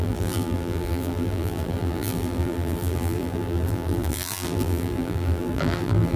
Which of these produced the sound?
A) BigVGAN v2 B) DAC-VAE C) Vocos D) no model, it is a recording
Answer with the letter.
A